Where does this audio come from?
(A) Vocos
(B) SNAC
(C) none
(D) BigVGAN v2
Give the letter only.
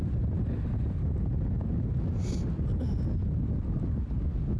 C